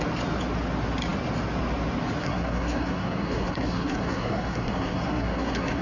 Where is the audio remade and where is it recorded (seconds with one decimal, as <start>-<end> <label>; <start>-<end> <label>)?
0.0-2.2 recorded; 2.2-5.8 remade